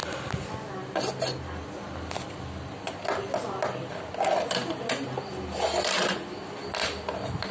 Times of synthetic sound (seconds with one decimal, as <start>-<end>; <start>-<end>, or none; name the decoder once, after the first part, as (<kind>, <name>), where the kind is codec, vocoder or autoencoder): none